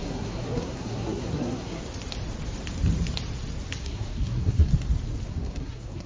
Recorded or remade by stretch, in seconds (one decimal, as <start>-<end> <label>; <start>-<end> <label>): 0.0-1.8 remade; 1.8-3.8 recorded; 3.8-4.7 remade; 4.7-5.3 recorded; 5.3-6.1 remade